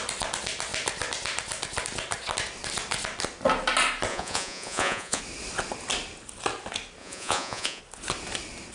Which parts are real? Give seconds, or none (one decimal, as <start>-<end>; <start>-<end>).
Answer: 0.0-4.1; 5.2-7.0; 7.8-8.7